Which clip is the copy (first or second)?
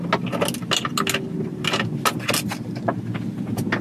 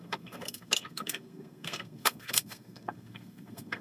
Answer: second